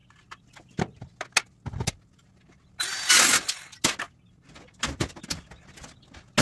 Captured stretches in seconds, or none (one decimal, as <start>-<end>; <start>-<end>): 0.0-6.4